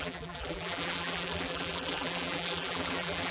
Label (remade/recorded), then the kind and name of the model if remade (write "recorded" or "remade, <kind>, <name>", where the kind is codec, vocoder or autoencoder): remade, vocoder, BigVGAN v2